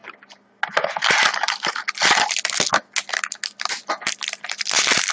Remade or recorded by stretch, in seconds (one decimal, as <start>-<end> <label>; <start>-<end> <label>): 0.0-5.1 recorded